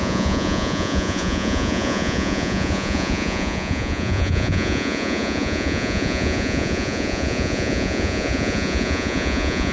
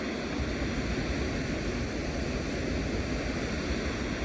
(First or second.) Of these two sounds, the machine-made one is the first